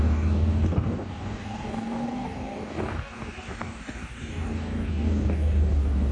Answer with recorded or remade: remade